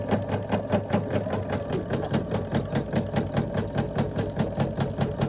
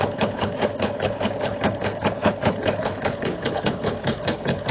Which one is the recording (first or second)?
first